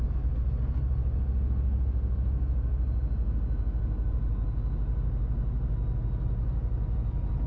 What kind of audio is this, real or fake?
real